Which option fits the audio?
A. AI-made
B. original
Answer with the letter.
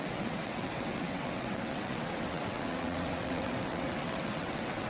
A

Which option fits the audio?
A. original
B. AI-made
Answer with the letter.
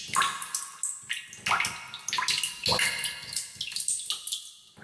A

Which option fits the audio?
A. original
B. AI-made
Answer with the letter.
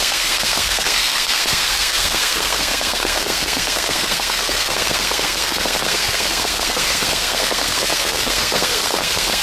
B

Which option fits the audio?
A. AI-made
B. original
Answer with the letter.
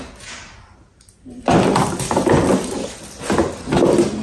B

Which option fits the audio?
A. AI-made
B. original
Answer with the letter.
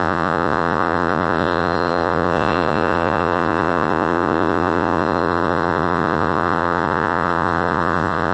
A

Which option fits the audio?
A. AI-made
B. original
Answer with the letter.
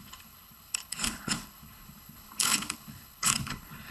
A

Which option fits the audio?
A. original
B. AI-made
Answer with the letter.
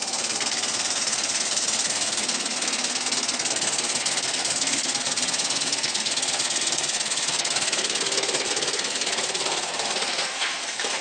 B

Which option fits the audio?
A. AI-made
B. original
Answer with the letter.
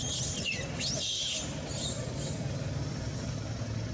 B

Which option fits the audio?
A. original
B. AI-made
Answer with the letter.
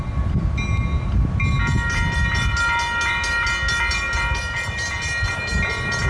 A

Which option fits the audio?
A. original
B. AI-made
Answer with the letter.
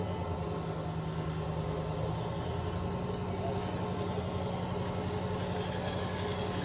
A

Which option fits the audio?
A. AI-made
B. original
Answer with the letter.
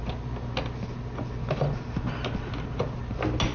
B